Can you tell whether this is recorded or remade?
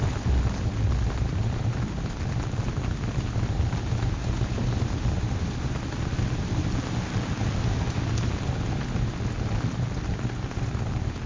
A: recorded